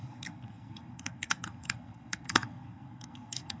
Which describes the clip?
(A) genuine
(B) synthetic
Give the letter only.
B